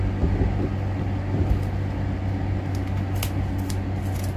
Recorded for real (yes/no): yes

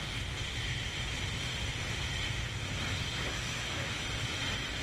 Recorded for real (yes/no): yes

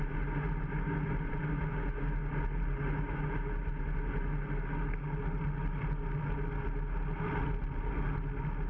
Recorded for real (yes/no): yes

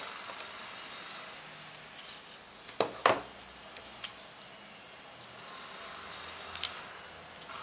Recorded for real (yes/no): yes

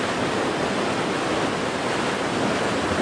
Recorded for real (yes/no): yes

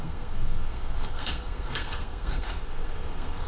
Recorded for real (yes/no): no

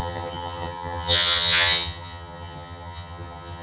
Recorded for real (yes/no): no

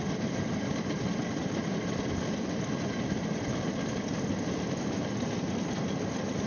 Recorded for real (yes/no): yes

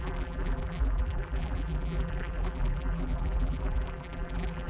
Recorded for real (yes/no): no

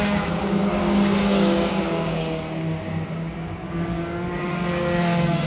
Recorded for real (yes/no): no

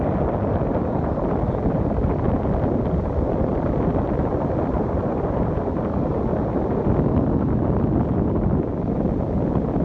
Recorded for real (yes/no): yes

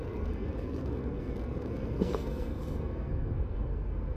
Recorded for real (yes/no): no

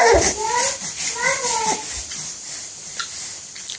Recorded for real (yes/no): yes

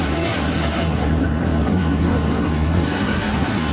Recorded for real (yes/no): no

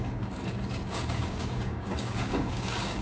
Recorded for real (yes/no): no